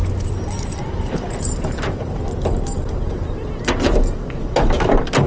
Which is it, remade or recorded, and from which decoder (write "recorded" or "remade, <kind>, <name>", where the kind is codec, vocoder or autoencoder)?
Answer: recorded